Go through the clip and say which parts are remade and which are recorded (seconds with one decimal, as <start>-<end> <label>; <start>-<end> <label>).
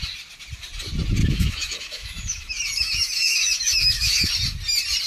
0.0-1.2 recorded; 1.2-4.3 remade; 4.3-5.1 recorded